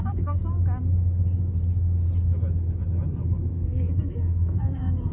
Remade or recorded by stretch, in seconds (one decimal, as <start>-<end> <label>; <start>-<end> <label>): 0.0-0.4 remade; 0.4-3.5 recorded; 3.5-5.1 remade